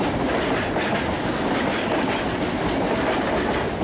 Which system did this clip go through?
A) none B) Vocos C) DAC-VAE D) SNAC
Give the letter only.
A